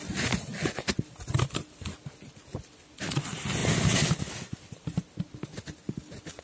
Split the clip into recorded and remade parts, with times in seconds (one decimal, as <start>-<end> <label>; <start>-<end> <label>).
0.0-6.4 recorded